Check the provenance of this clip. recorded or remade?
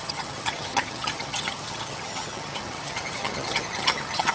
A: remade